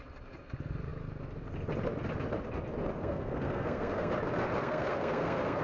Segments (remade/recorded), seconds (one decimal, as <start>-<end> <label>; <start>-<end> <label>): 0.0-3.0 recorded; 3.0-4.1 remade; 4.1-4.6 recorded; 4.6-5.6 remade